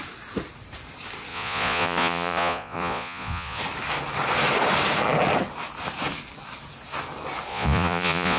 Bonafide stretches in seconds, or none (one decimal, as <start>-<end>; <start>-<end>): 0.0-1.3; 3.6-7.5